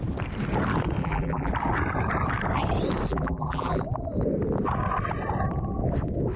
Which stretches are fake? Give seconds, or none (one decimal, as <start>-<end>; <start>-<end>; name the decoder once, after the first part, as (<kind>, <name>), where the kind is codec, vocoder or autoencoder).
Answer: 1.0-1.5 (vocoder, BigVGAN v2); 3.1-3.8